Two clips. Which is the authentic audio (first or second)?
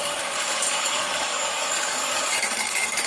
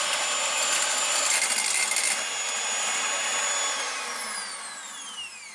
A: second